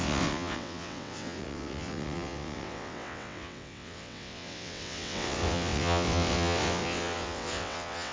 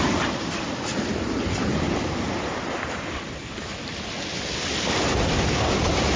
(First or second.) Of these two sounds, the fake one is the first